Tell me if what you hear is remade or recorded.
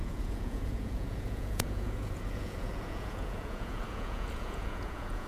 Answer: remade